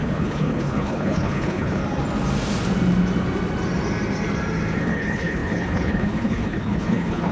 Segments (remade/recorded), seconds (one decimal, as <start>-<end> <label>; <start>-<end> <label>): 0.0-1.8 remade; 1.8-4.8 recorded; 4.8-7.3 remade